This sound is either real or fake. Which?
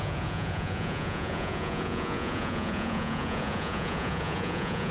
fake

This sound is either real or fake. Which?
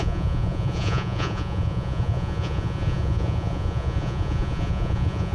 fake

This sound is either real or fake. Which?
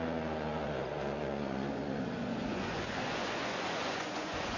fake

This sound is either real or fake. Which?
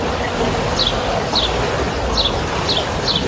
real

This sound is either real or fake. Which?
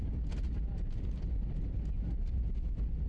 real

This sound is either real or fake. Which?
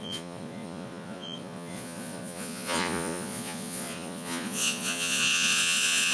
fake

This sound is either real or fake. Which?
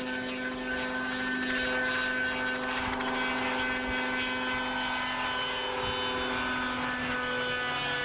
real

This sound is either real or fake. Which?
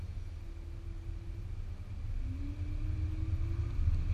real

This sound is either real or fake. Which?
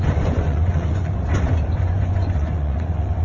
fake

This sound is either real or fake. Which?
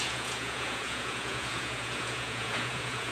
fake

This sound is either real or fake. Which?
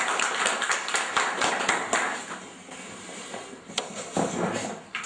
real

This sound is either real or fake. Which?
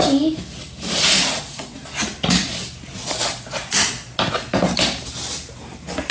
real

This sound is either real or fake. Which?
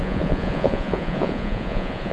fake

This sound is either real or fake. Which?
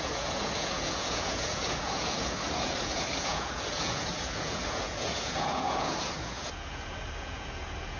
fake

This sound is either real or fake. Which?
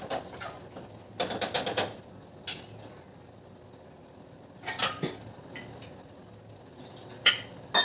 real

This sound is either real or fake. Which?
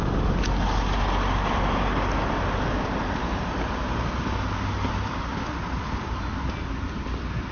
real